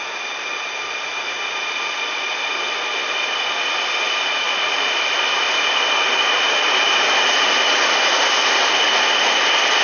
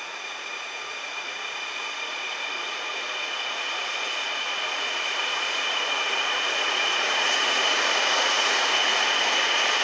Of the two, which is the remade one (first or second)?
second